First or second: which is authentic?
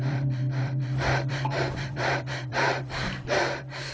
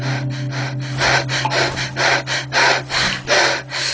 second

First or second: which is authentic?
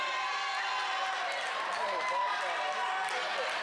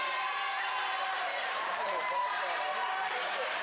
first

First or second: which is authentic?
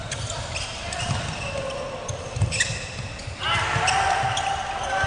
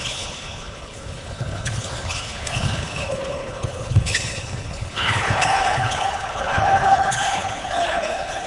first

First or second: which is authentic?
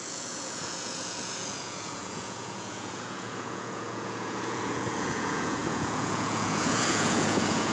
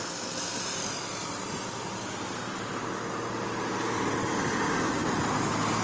second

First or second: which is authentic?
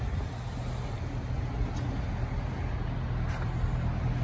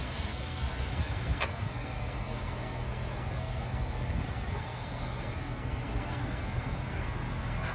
first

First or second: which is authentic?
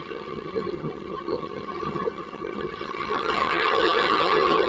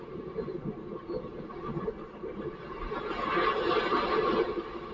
second